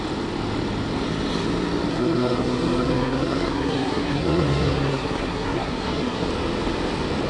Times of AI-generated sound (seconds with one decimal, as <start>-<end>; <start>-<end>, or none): 1.9-6.3